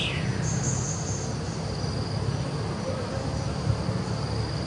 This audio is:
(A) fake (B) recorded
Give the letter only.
B